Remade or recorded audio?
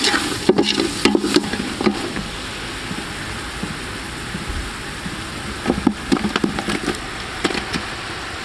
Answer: recorded